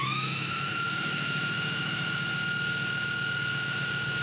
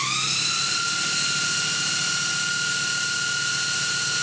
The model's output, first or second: first